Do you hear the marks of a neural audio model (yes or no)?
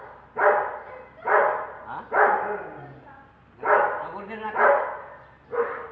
no